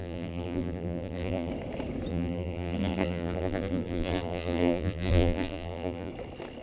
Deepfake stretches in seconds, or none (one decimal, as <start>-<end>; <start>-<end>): 0.0-1.5; 2.1-6.1